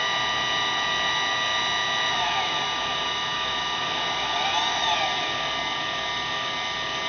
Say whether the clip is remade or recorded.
recorded